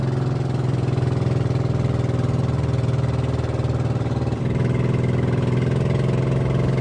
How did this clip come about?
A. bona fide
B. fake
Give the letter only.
A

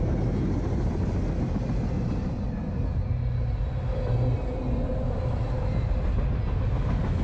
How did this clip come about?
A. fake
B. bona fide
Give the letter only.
B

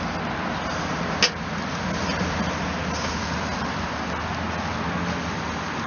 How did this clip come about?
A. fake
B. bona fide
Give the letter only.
B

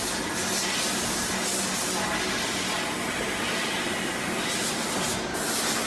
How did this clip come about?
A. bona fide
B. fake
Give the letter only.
A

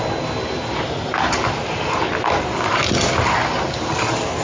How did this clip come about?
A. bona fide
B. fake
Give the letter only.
A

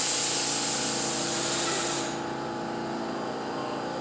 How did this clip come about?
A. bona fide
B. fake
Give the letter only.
A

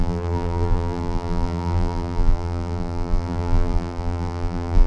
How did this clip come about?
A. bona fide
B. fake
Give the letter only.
B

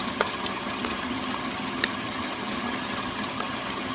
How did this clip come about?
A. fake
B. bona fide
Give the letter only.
A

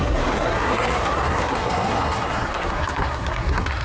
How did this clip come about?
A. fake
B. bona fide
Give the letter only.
A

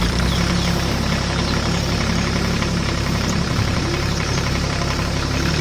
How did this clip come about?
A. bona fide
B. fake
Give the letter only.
B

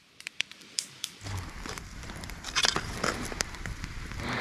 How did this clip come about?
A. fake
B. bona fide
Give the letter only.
A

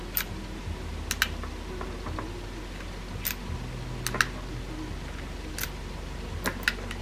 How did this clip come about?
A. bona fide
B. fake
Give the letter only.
A